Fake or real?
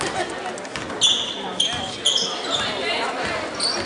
real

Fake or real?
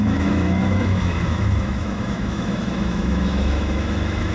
fake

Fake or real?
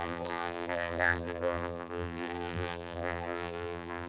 fake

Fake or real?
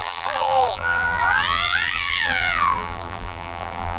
fake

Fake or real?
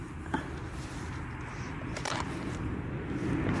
real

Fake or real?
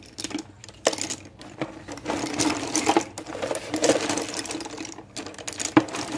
real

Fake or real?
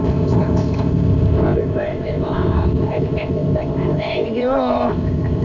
fake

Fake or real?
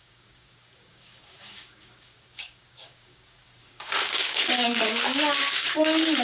fake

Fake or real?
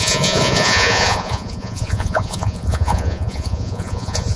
fake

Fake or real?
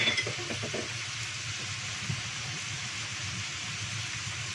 real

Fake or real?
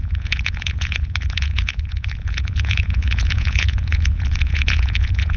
fake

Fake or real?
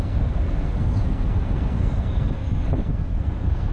fake